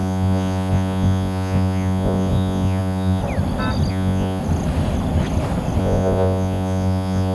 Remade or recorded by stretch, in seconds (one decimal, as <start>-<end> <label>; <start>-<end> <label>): 0.0-3.2 remade; 3.2-3.9 recorded; 3.9-4.4 remade; 4.4-5.8 recorded; 5.8-7.3 remade